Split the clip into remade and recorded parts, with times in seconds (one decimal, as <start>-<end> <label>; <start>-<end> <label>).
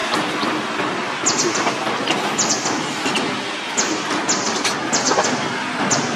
0.0-6.2 recorded